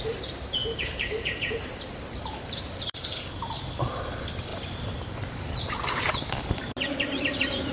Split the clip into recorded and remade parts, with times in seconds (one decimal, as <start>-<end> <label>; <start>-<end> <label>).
0.0-7.7 remade